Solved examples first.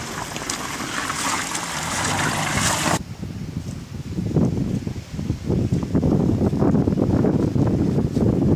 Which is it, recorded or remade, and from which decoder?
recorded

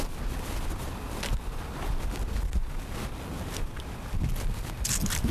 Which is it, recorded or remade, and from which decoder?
recorded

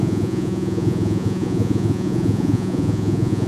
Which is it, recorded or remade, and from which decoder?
remade, vocoder, Vocos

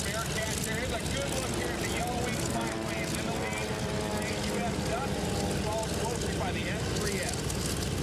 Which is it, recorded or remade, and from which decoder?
recorded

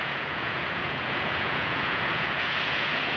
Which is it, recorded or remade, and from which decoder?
remade, vocoder, Vocos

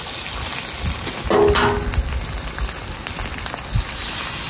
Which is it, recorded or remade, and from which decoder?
recorded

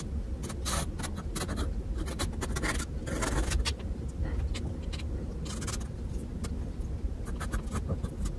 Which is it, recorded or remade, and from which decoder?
recorded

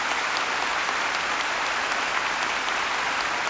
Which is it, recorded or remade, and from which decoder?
recorded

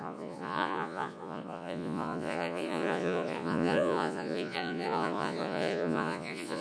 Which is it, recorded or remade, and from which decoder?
remade, vocoder, Vocos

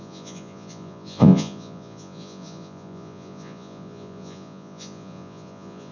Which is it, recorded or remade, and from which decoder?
remade, vocoder, Vocos